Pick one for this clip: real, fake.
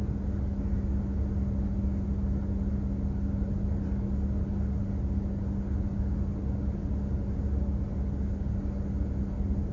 real